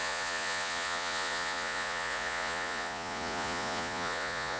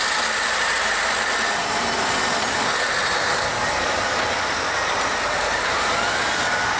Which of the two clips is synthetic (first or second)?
first